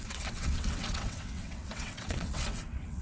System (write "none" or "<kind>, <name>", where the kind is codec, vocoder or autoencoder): vocoder, WaveNeXt